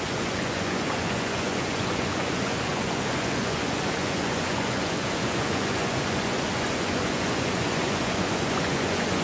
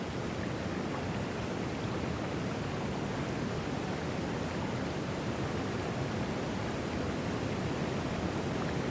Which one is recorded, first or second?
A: second